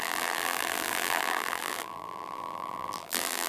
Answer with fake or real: fake